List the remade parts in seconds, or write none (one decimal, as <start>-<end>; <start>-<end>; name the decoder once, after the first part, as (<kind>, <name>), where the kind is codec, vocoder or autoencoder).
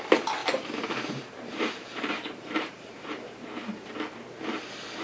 0.0-0.4 (vocoder, BigVGAN v2); 1.1-3.6; 4.5-5.0